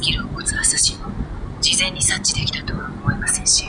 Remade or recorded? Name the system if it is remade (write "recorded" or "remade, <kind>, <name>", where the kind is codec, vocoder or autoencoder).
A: recorded